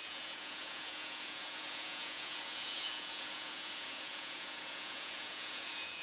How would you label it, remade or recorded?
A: remade